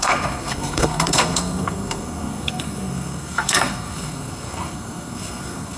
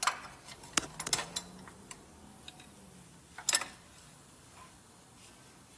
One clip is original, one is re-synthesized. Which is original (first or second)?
second